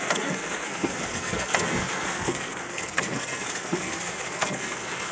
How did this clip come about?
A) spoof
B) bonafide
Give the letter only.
A